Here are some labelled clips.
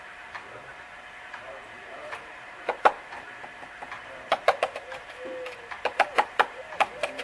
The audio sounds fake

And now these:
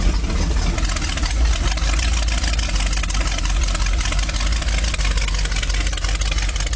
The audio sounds real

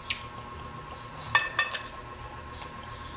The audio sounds real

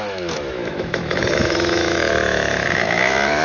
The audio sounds fake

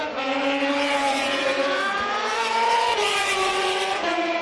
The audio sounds fake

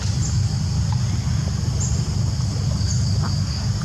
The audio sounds real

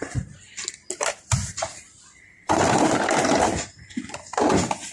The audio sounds real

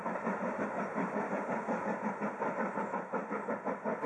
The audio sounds real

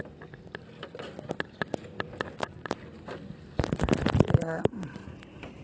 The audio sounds real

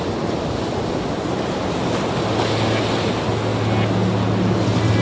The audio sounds real